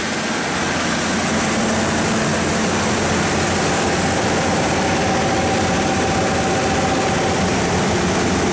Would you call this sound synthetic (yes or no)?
no